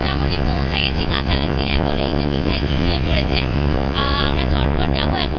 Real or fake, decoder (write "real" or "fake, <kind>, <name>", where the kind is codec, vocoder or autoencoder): fake, vocoder, WaveNeXt